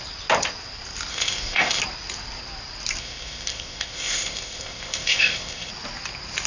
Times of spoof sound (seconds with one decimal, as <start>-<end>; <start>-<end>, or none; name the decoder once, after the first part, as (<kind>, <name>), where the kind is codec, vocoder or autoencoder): 1.1-1.8 (codec, ZipCodec); 3.0-5.7